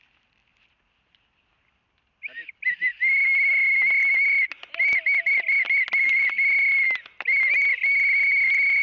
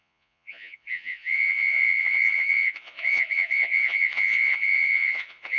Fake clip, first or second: second